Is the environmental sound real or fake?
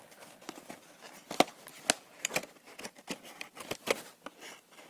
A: real